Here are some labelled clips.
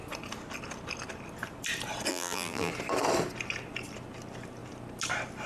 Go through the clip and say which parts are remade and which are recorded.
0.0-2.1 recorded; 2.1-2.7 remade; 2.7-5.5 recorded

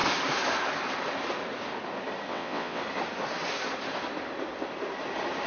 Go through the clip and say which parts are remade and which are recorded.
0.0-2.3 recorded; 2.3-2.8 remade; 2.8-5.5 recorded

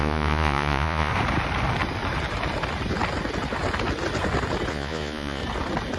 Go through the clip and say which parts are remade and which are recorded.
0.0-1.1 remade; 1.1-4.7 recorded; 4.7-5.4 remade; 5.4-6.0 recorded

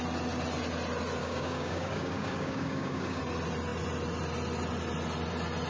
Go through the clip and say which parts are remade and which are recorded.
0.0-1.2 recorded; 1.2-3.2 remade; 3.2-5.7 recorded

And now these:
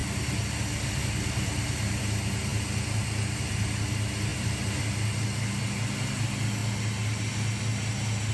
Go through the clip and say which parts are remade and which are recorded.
0.0-4.3 recorded; 4.3-4.8 remade; 4.8-8.3 recorded

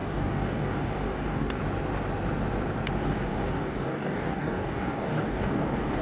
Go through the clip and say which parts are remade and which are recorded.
0.0-1.6 remade; 1.6-3.0 recorded; 3.0-6.0 remade